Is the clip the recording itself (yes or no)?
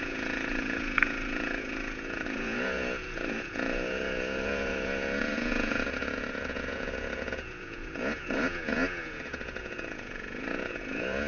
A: no